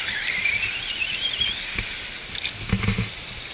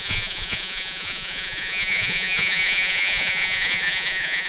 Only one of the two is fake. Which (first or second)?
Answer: second